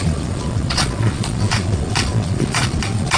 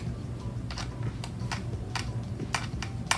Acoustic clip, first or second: second